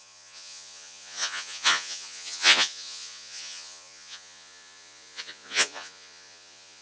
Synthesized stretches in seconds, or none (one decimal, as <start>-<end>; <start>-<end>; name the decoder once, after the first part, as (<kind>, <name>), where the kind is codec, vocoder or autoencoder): 0.0-6.8 (vocoder, Vocos)